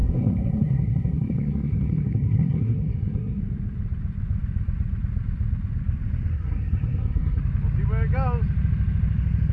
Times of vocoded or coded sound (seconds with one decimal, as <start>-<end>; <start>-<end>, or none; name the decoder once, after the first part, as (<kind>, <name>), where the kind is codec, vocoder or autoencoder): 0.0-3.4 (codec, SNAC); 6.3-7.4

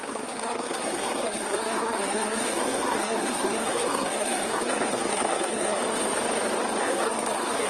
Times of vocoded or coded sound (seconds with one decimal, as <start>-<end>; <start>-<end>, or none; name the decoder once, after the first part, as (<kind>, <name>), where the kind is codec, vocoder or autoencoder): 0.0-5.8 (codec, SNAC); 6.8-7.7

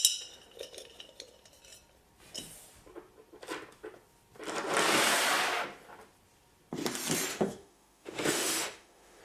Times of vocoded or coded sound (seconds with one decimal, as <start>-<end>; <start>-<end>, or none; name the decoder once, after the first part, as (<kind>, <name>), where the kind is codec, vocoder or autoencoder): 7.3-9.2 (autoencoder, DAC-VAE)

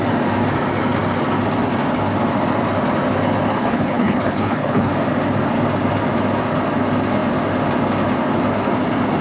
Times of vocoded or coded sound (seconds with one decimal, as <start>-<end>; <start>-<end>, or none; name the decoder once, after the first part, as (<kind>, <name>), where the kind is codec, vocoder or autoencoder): 3.5-4.9 (codec, HILCodec)

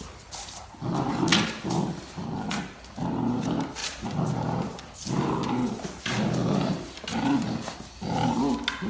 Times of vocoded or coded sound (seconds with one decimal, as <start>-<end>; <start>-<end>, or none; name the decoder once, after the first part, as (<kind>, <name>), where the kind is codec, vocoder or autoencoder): none